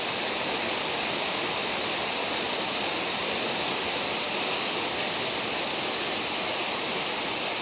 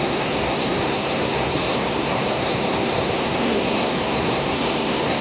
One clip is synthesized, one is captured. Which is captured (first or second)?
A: first